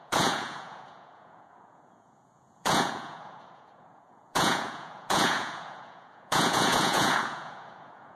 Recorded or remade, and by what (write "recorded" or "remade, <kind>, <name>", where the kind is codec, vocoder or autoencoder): remade, vocoder, Vocos